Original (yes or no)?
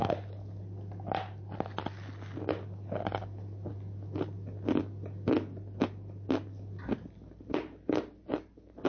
yes